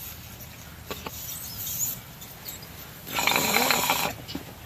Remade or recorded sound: recorded